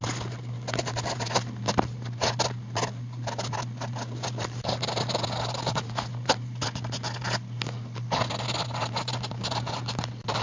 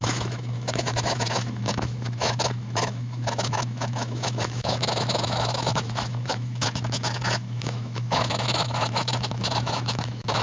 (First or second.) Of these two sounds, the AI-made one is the second